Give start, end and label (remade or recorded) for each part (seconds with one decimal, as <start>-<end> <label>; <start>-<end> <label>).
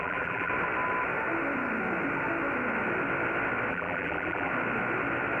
0.0-0.5 remade; 0.5-3.7 recorded; 3.7-4.5 remade; 4.5-5.4 recorded